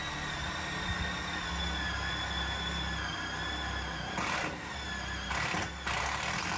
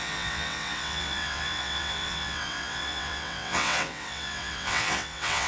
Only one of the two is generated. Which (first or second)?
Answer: second